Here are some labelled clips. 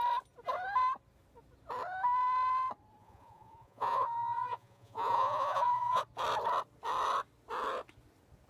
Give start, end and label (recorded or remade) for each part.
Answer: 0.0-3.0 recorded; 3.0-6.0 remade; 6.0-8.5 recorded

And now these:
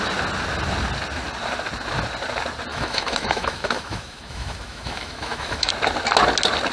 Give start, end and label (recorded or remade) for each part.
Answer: 0.0-2.7 recorded; 2.7-5.7 remade; 5.7-6.7 recorded